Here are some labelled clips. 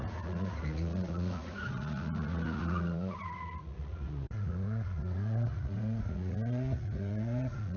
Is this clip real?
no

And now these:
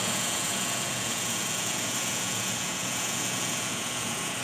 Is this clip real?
no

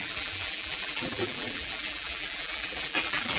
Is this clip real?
no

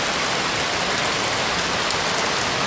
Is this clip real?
yes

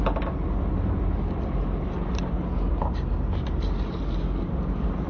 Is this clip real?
yes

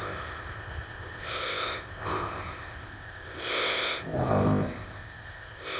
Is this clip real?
no